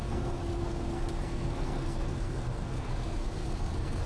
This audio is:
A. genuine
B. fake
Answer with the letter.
B